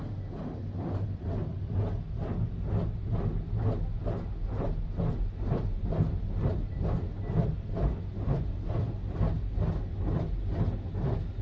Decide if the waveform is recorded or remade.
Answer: recorded